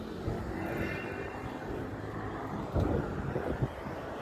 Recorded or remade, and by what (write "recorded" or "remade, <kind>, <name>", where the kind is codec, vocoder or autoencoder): recorded